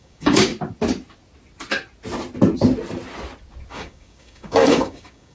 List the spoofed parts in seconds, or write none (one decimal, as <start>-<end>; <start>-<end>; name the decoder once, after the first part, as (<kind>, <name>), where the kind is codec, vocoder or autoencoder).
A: 0.0-0.5 (codec, DAC); 3.7-5.3